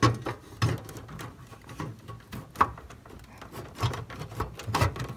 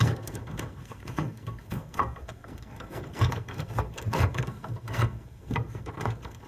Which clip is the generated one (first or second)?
second